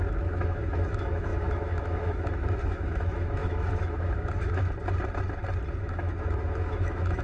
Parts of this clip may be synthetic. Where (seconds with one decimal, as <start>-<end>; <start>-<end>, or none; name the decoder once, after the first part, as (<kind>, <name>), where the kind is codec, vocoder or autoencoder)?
0.0-4.6 (autoencoder, DAC-VAE); 5.8-7.2